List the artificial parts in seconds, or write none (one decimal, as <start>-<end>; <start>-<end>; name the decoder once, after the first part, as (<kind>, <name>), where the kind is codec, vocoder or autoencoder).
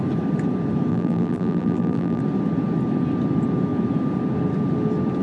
0.9-2.2 (vocoder, BigVGAN v2)